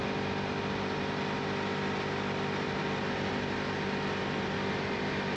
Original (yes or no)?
yes